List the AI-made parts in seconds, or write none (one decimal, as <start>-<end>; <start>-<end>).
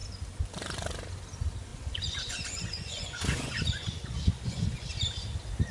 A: 1.7-4.9